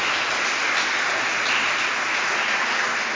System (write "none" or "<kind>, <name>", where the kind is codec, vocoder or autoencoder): none